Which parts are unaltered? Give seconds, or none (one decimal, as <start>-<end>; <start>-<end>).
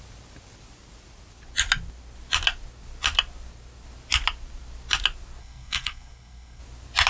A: 0.0-5.4; 6.6-7.1